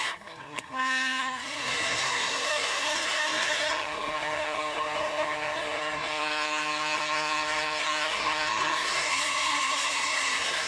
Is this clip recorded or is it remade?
remade